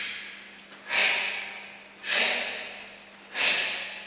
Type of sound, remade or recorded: recorded